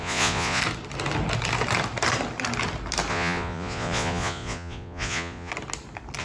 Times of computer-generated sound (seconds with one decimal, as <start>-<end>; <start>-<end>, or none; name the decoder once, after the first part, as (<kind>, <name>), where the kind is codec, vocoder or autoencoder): 0.0-0.6 (vocoder, Vocos); 3.1-5.5